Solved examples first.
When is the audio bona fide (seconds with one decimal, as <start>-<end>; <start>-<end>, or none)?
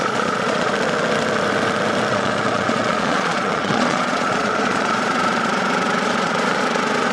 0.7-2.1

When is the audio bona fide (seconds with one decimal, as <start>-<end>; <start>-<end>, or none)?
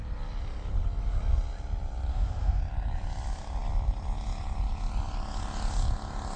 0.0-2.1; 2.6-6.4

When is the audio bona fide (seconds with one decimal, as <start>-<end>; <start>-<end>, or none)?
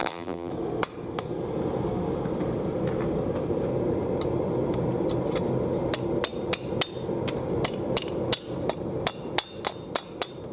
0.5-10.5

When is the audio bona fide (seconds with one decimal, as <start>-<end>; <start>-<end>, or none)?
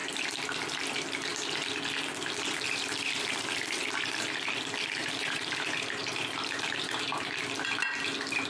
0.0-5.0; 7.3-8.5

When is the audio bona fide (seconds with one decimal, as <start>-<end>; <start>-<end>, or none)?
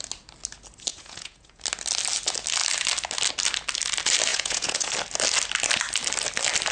0.0-0.9; 1.6-4.3; 4.9-6.7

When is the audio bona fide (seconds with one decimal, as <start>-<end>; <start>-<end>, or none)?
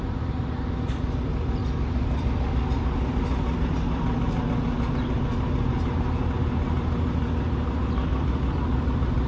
0.0-9.3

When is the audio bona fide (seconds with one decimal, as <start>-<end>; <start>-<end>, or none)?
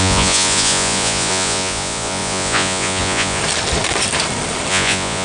3.4-4.7